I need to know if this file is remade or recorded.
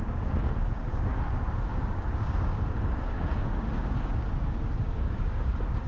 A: remade